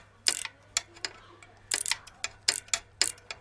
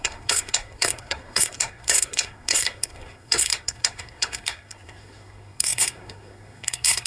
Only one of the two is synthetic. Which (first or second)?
second